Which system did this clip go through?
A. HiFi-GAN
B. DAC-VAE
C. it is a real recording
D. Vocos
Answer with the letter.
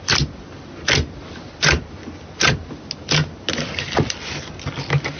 C